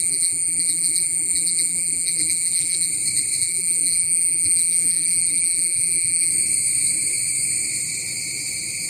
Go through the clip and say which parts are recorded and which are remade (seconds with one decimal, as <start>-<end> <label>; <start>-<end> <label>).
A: 0.0-2.9 remade; 2.9-3.4 recorded; 3.4-6.3 remade; 6.3-8.9 recorded